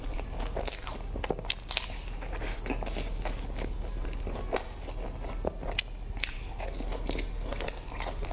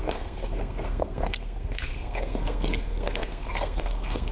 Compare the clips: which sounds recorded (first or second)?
first